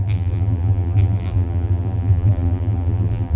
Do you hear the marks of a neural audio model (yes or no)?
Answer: yes